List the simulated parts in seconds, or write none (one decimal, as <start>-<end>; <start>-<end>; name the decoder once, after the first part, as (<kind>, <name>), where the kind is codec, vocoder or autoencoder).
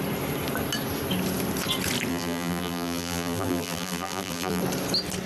2.1-4.6 (vocoder, BigVGAN v2)